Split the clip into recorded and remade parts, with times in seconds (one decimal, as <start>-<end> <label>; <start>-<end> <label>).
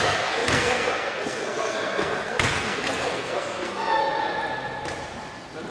0.0-4.0 remade; 4.0-5.7 recorded